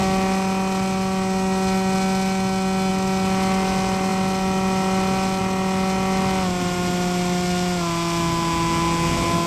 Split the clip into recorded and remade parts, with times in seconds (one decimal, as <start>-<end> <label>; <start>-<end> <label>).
0.0-9.5 recorded